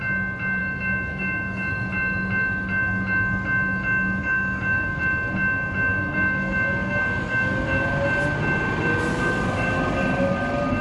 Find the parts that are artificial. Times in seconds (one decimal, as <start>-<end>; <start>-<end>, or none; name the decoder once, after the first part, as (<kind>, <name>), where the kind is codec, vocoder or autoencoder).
0.6-1.7 (codec, DAC); 4.2-5.0; 5.9-7.8